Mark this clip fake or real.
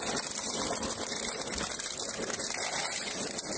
real